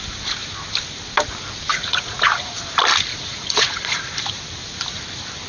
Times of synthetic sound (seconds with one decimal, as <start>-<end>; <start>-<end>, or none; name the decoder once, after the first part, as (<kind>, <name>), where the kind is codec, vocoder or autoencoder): 1.7-2.5 (vocoder, Vocos); 3.1-4.0